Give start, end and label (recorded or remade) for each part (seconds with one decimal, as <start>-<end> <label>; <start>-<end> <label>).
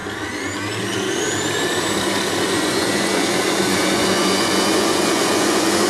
0.0-2.4 recorded; 2.4-5.9 remade